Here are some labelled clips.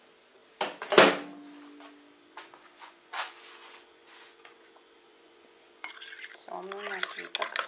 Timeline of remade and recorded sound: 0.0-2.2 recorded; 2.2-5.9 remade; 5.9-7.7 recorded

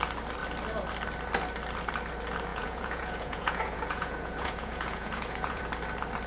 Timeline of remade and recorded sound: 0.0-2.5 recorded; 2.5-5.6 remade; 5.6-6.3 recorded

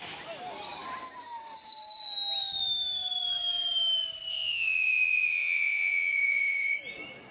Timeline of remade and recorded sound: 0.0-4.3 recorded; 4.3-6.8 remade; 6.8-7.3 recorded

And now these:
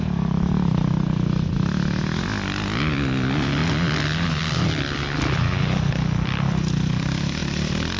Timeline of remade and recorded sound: 0.0-8.0 recorded

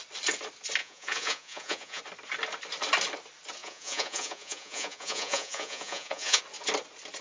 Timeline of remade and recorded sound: 0.0-0.8 recorded; 0.8-2.0 remade; 2.0-3.6 recorded; 3.6-6.4 remade; 6.4-7.2 recorded

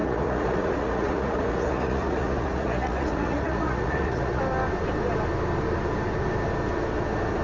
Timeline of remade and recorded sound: 0.0-4.4 remade; 4.4-7.4 recorded